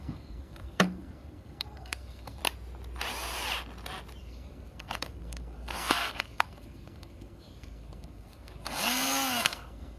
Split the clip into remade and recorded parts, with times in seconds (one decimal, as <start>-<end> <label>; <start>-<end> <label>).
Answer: 0.0-2.4 remade; 2.4-4.2 recorded; 4.2-10.0 remade